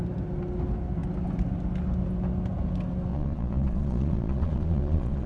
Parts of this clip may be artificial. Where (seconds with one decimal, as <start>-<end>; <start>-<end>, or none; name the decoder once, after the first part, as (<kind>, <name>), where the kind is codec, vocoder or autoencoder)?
3.1-5.3 (vocoder, Vocos)